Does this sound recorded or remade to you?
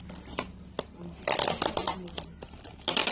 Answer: recorded